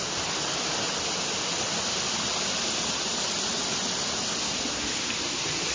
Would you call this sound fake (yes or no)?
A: no